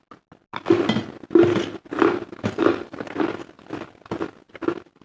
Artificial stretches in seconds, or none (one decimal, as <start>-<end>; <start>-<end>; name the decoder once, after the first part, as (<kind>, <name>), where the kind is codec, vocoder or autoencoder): none